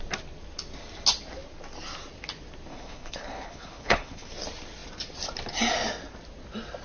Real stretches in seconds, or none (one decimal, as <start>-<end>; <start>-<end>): 0.0-2.7; 4.3-6.8